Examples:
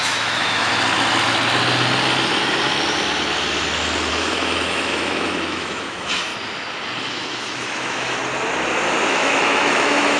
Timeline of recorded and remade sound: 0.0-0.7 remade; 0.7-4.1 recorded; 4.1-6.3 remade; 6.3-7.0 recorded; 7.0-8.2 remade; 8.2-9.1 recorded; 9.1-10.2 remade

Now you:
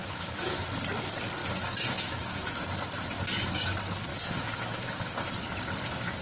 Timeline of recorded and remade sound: 0.0-0.6 remade; 0.6-1.4 recorded; 1.4-2.6 remade; 2.6-4.1 recorded; 4.1-5.3 remade; 5.3-6.2 recorded

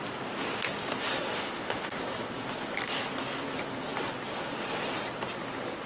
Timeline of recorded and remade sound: 0.0-1.3 recorded; 1.3-2.0 remade; 2.0-5.9 recorded

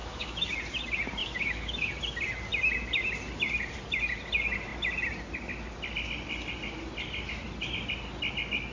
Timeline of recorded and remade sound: 0.0-0.5 remade; 0.5-1.2 recorded; 1.2-1.9 remade; 1.9-8.7 recorded